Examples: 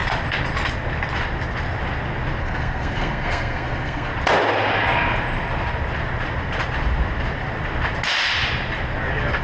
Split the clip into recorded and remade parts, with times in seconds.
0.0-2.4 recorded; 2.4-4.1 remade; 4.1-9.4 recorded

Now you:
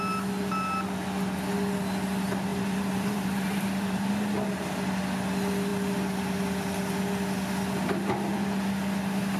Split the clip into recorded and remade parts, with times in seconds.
0.0-2.5 recorded; 2.5-4.1 remade; 4.1-9.4 recorded